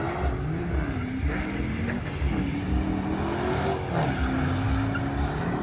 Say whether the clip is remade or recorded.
recorded